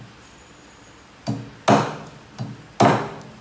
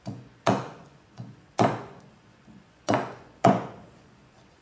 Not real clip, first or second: second